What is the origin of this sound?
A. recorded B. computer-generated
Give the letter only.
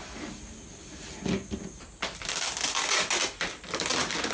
A